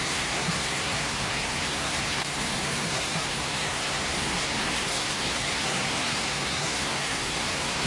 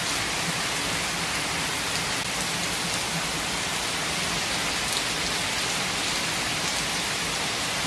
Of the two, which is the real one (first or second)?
second